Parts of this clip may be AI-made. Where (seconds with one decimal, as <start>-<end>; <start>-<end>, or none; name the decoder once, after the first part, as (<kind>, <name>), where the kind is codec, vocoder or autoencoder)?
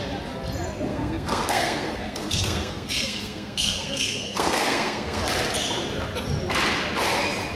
0.9-5.2 (codec, SNAC)